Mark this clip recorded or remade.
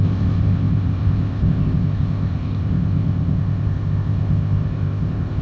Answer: remade